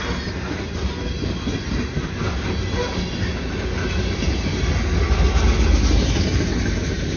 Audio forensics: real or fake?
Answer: real